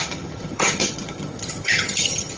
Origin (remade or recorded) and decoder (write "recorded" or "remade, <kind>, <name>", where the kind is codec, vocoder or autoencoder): remade, vocoder, HiFi-GAN